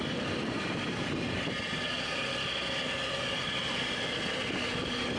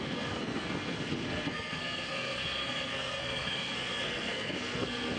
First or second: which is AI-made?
second